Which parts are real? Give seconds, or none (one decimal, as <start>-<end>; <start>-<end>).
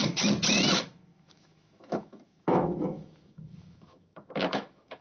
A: 0.0-0.7